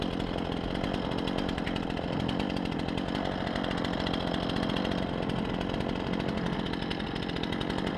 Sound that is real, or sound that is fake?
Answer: real